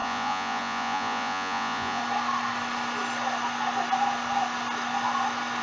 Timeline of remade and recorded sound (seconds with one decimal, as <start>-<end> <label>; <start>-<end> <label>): 0.0-2.0 remade; 2.0-5.6 recorded